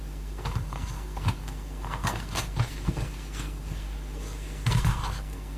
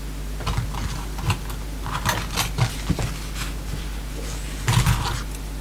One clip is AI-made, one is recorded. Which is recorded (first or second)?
second